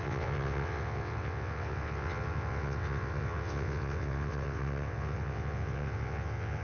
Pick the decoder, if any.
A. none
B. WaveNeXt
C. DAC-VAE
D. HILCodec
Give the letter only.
B